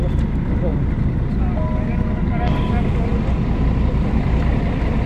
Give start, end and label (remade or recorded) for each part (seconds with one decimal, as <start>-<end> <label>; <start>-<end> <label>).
0.0-5.1 recorded